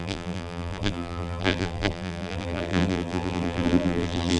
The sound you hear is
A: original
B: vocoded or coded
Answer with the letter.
B